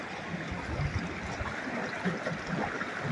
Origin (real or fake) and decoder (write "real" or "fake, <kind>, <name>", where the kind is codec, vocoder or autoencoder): real